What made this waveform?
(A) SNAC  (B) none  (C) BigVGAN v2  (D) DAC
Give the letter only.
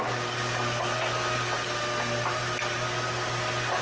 B